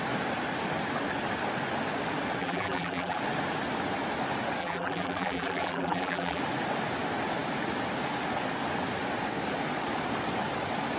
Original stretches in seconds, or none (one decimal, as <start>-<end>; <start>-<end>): 0.0-2.4; 3.2-4.6; 6.4-11.0